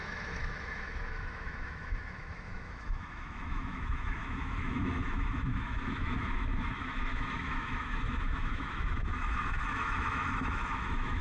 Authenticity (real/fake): fake